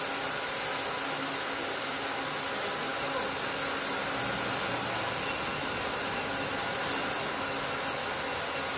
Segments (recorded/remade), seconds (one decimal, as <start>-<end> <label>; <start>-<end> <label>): 0.0-8.8 recorded